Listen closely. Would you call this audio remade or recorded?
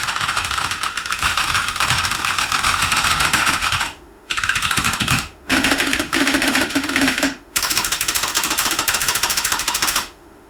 remade